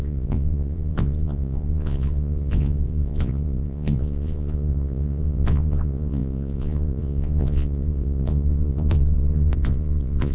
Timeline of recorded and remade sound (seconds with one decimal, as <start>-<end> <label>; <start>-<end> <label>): 0.0-10.3 remade